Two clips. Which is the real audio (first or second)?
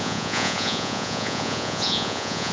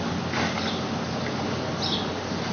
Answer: second